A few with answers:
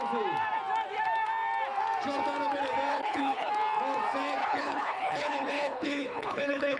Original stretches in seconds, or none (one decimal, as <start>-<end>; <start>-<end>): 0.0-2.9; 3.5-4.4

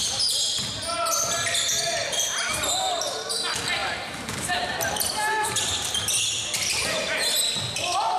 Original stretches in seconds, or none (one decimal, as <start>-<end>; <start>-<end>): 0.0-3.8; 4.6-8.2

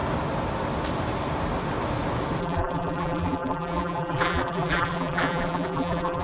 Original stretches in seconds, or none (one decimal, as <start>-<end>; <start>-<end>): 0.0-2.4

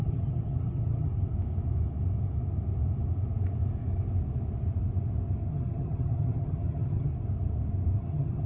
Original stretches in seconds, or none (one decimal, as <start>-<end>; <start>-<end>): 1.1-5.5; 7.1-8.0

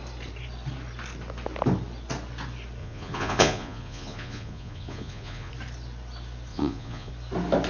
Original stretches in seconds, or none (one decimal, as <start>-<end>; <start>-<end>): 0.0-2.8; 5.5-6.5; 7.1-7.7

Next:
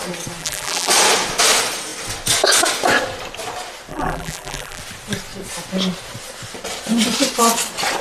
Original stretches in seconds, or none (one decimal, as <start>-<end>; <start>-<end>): 0.0-0.4; 0.9-3.9; 4.8-8.0

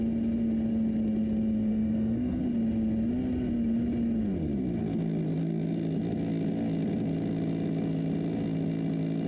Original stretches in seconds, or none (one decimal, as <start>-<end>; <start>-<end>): 0.0-1.7; 2.4-9.3

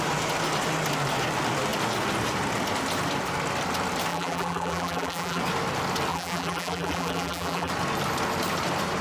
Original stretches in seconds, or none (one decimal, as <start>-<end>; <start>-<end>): 0.0-4.1; 5.4-6.1; 7.7-9.0